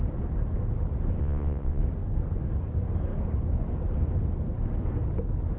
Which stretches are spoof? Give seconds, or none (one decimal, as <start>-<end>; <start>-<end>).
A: 1.2-1.8